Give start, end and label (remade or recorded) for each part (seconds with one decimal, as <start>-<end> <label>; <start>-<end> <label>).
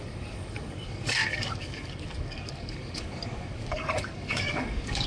0.0-5.1 remade